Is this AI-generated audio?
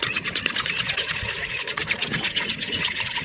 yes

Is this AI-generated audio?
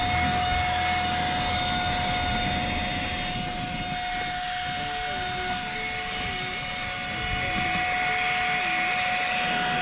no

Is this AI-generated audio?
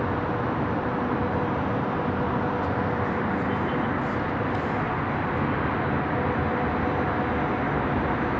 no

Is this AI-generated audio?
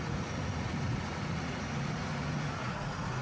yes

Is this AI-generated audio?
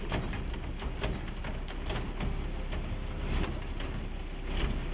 no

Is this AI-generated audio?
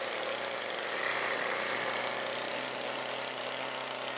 no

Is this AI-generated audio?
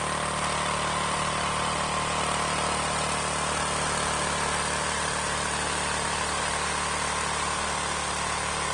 no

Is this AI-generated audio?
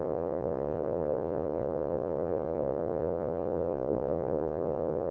yes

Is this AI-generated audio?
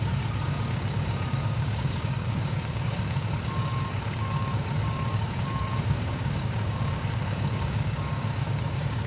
yes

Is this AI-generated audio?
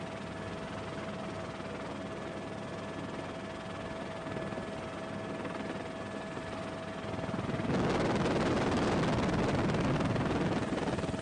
no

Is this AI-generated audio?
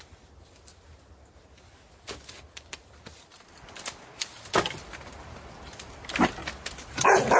no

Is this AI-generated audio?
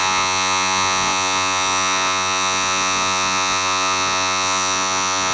yes